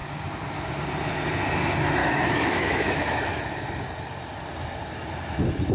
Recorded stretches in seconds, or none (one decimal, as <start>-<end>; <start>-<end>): 0.0-2.0; 3.4-5.7